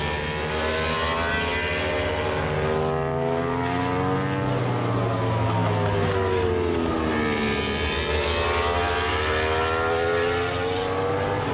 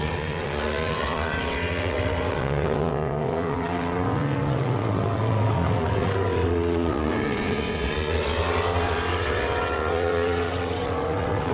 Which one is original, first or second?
first